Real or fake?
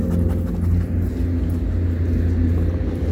real